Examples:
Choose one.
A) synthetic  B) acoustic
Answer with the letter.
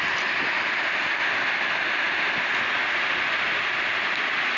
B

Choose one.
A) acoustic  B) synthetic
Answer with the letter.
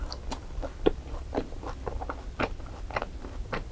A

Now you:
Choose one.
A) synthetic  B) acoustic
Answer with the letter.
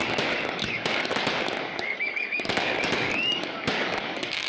A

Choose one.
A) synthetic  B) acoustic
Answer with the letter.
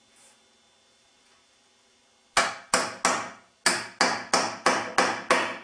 B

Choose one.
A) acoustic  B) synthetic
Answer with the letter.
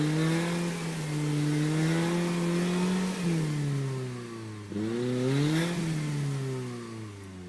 A